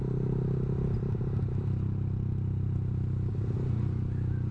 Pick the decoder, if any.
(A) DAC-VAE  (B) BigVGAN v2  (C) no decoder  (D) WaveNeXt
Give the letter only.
C